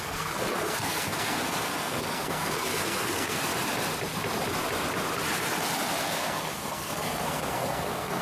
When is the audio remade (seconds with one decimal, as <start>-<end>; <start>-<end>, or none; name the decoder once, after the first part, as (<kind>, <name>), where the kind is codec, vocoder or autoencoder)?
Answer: 0.0-3.5 (codec, SNAC); 6.0-8.2